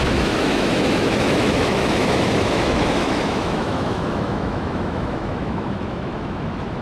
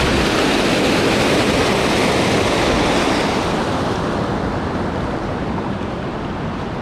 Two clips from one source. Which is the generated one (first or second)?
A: first